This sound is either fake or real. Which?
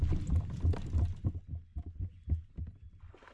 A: real